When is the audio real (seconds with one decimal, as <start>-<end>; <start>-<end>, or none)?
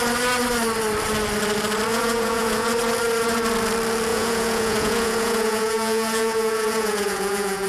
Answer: 0.0-1.9; 2.7-4.1